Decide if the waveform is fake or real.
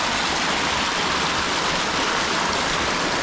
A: real